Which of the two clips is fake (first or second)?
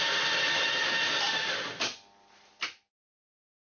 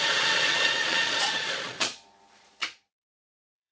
second